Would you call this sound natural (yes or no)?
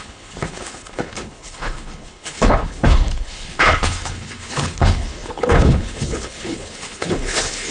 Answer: no